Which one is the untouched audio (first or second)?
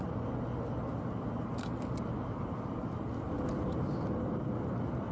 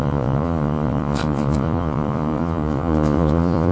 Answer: first